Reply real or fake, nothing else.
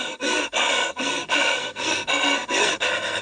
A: fake